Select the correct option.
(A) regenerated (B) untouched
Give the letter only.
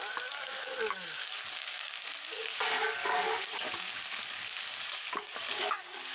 A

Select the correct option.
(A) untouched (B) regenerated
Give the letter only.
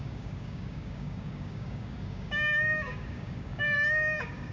B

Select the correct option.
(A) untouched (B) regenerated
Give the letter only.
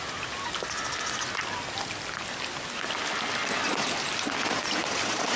A